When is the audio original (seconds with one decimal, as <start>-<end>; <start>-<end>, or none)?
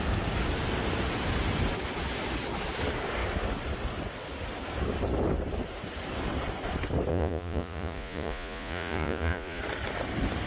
0.0-7.1; 9.6-10.5